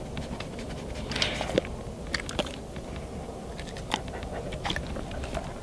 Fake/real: real